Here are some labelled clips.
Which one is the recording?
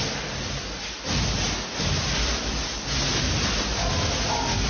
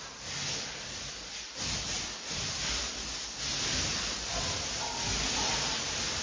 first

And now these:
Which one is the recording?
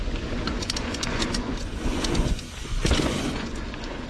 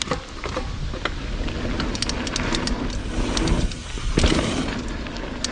second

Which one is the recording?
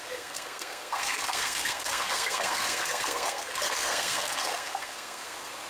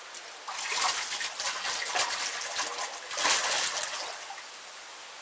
second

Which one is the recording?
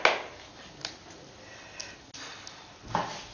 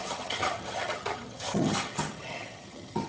first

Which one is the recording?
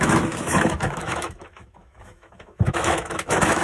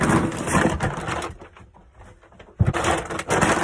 second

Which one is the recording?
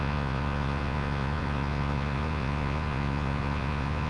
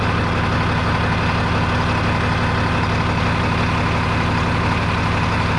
second